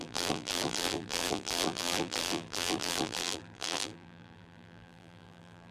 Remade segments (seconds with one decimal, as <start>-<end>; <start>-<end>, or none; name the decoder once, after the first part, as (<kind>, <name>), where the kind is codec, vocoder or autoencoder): 0.0-5.7 (vocoder, BigVGAN v2)